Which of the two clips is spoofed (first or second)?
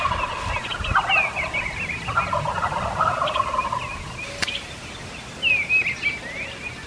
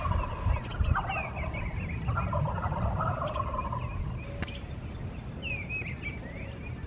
second